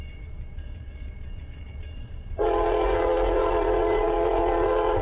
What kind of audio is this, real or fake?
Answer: fake